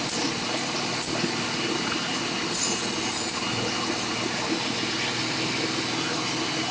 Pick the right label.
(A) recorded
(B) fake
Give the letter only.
A